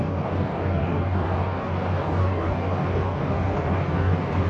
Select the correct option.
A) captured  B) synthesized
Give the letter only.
B